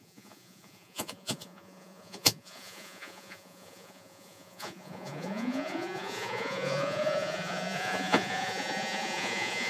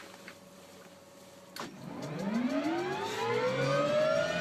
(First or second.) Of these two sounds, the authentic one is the second